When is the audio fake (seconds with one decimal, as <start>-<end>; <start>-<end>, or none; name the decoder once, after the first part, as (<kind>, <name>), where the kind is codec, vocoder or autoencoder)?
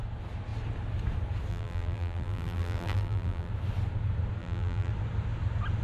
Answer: 1.5-3.5 (vocoder, BigVGAN v2); 4.4-4.9